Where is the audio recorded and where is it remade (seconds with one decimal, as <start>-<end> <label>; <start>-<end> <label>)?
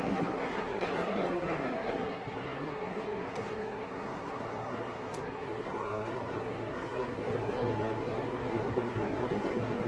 0.0-9.9 remade